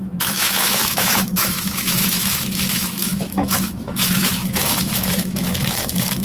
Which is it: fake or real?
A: fake